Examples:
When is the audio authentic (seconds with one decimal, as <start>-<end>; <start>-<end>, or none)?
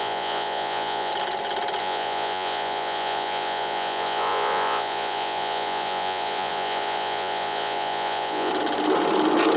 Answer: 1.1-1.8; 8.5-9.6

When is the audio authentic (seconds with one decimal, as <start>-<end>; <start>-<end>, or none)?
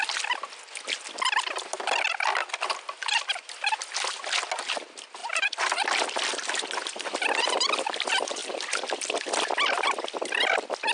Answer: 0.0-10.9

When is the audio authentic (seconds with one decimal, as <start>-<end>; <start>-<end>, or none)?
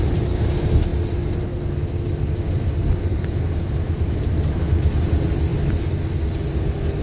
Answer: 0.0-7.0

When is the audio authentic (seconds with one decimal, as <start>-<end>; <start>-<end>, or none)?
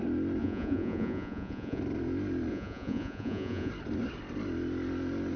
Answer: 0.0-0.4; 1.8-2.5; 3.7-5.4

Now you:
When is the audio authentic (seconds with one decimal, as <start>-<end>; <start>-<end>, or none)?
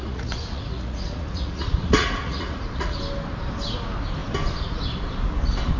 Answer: 3.0-5.8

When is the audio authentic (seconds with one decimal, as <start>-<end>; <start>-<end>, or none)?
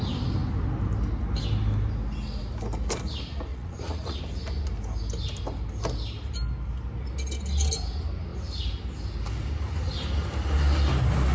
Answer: 0.0-3.5; 4.2-11.3